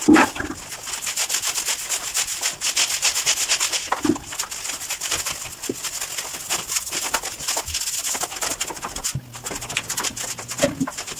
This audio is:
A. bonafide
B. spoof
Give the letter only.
A